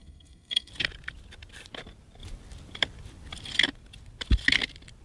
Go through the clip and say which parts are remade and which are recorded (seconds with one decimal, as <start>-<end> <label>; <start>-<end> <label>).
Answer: 0.0-0.7 remade; 0.7-5.0 recorded